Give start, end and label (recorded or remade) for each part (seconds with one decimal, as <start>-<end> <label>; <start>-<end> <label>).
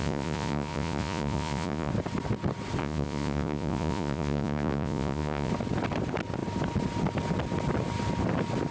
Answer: 0.0-1.9 remade; 1.9-2.8 recorded; 2.8-5.5 remade; 5.5-8.7 recorded